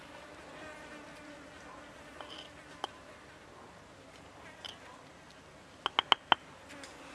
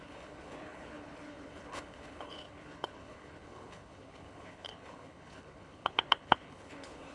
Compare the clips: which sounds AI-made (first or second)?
second